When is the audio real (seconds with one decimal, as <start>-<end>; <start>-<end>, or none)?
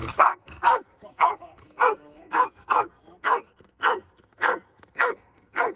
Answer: none